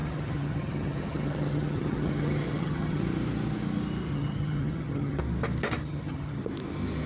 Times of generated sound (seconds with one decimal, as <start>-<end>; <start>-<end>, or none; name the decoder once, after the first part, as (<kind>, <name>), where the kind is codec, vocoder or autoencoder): 0.0-3.0 (vocoder, HiFi-GAN); 4.1-5.2; 5.8-6.4